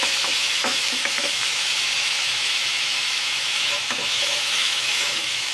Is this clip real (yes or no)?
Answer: no